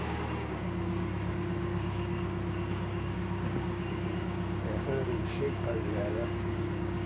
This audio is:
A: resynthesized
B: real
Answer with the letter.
A